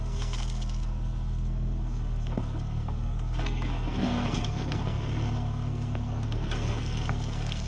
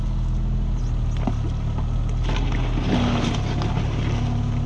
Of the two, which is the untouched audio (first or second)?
second